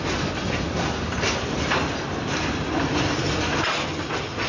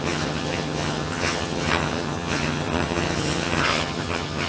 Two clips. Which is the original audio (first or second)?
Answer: first